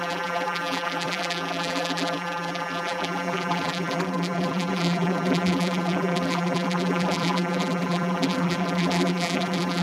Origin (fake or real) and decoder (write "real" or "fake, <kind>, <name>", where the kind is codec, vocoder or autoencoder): fake, vocoder, BigVGAN v2